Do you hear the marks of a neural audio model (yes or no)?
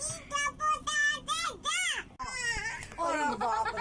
no